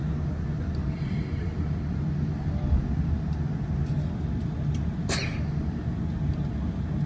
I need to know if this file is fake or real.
real